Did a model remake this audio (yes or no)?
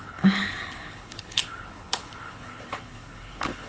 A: yes